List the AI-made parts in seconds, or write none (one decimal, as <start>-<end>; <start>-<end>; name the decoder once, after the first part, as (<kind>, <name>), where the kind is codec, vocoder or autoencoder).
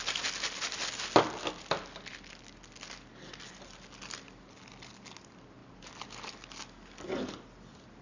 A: 5.6-6.3 (vocoder, BigVGAN v2)